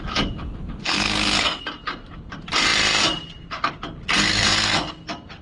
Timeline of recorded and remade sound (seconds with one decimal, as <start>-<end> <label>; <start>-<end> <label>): 0.0-0.8 recorded; 0.8-1.6 remade; 1.6-4.3 recorded; 4.3-4.9 remade; 4.9-5.4 recorded